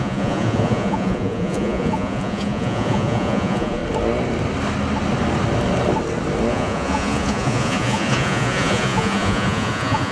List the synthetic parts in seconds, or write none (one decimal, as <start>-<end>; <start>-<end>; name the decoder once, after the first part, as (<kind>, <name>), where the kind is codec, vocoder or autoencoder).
0.0-3.8 (vocoder, Vocos); 6.5-10.1